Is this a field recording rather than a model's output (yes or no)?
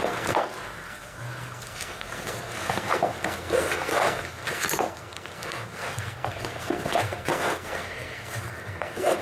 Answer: no